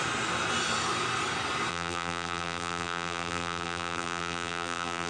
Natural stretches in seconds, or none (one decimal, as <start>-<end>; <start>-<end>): 0.0-1.7